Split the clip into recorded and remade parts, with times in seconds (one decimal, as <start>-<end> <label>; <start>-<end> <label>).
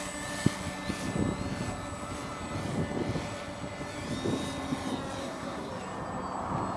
0.0-5.2 recorded; 5.2-5.7 remade; 5.7-6.8 recorded